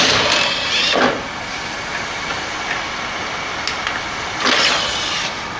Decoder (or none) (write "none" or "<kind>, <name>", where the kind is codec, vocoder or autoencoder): none